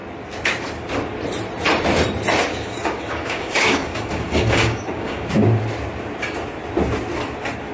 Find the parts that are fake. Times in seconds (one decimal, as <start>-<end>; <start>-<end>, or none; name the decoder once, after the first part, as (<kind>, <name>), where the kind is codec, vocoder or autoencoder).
2.5-5.3 (codec, DAC)